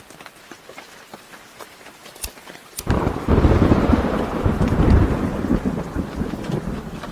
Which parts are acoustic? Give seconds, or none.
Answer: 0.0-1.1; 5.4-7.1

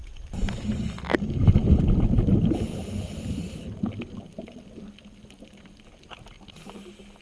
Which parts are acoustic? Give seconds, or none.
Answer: 0.9-7.2

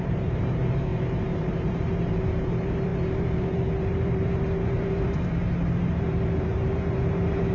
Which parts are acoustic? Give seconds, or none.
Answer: none

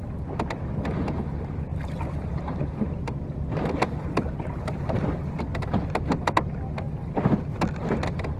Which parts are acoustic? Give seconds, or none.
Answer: 0.0-1.7; 5.4-8.4

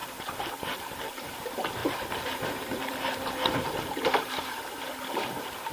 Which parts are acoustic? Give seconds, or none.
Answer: 1.0-1.8; 4.6-5.7